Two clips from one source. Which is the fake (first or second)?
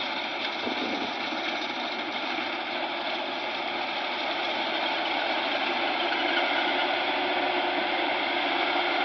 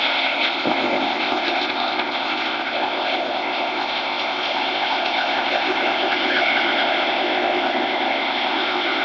second